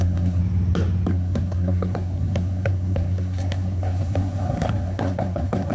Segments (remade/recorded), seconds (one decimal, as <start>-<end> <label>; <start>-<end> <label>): 0.0-0.4 remade; 0.4-1.1 recorded; 1.1-5.7 remade